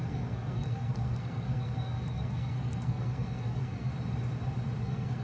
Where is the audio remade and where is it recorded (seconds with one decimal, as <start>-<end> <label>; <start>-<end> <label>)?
0.0-3.9 remade; 3.9-4.8 recorded; 4.8-5.2 remade